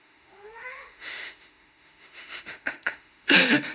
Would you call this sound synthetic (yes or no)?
yes